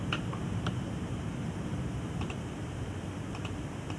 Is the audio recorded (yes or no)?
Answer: no